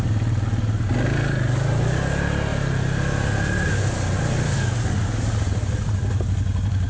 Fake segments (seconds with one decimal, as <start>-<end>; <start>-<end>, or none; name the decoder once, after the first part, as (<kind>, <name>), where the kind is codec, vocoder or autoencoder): none